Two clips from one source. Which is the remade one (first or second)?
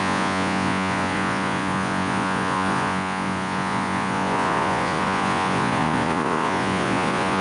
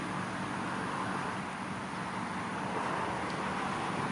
first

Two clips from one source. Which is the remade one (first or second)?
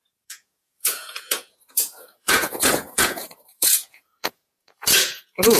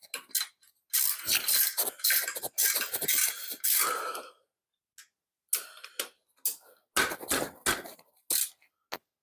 first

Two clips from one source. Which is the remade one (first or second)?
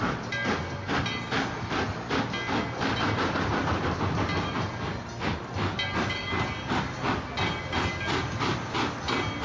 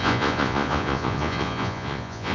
second